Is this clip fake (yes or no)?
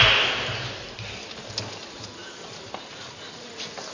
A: no